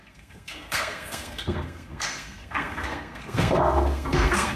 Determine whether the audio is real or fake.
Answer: fake